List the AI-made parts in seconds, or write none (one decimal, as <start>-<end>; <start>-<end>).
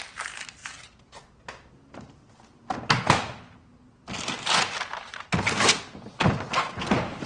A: none